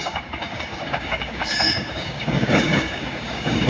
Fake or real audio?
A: fake